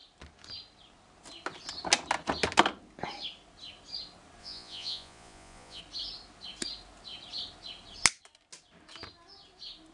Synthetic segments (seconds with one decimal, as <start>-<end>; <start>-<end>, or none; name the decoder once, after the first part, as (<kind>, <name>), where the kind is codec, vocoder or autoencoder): 4.4-5.8 (vocoder, Vocos)